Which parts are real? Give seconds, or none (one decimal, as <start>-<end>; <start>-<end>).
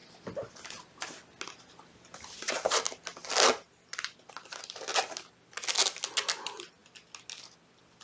0.0-8.0